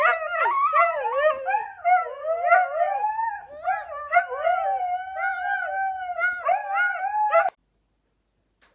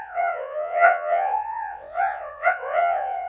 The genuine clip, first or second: first